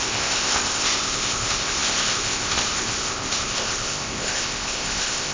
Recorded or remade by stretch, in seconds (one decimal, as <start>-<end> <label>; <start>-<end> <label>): 0.0-5.3 remade